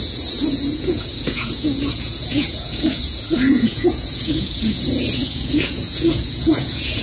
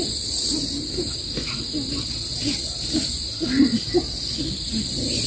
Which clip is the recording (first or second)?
second